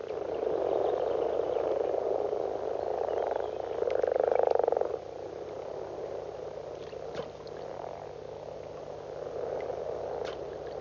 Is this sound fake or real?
real